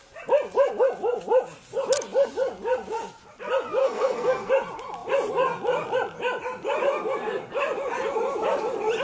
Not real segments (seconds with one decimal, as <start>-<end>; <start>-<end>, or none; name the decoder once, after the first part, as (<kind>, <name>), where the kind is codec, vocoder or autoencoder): 3.8-4.5 (codec, SNAC)